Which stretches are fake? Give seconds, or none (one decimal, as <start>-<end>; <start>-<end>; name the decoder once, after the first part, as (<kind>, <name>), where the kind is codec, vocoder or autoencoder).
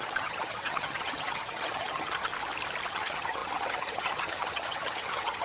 0.0-2.3 (vocoder, HiFi-GAN); 2.9-5.4